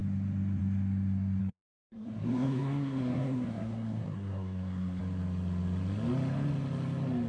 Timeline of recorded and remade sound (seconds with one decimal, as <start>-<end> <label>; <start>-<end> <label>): 0.0-1.4 recorded; 1.4-5.0 remade; 5.0-7.3 recorded